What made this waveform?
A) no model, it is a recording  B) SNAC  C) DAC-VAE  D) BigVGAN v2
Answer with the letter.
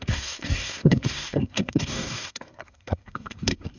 B